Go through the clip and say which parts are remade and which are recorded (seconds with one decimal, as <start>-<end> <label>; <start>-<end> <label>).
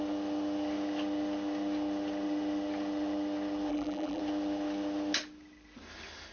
0.0-3.7 recorded; 3.7-4.2 remade; 4.2-6.3 recorded